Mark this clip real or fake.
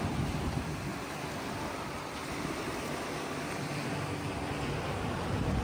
fake